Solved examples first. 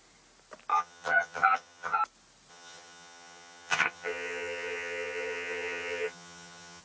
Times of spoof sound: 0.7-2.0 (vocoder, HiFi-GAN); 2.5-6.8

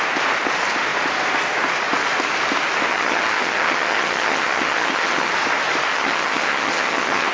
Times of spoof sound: 2.9-5.3 (vocoder, HiFi-GAN); 5.9-7.3

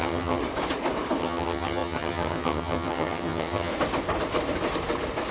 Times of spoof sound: 0.0-0.4 (vocoder, HiFi-GAN); 1.2-3.7

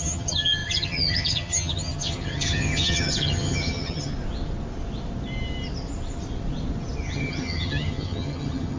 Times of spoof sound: 0.0-4.1 (vocoder, HiFi-GAN); 7.1-8.8

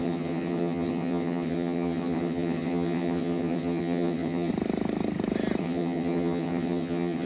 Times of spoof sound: 0.0-4.5 (vocoder, HiFi-GAN); 5.6-7.3